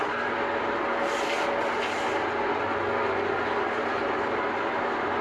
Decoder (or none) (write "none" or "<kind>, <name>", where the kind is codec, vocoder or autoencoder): none